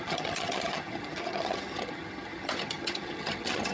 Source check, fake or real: fake